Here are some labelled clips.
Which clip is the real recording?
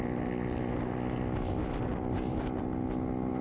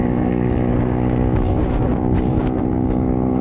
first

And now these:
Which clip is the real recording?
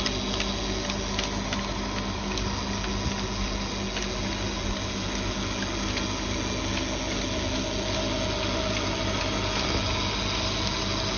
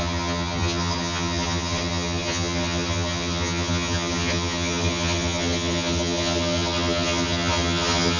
first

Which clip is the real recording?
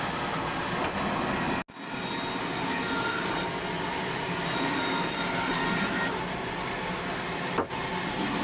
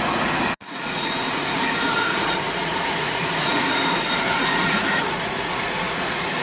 first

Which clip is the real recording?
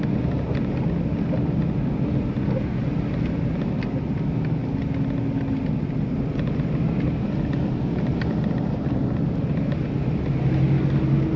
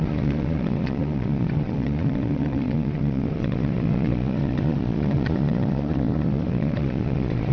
first